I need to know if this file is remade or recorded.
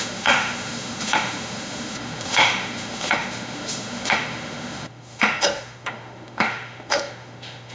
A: remade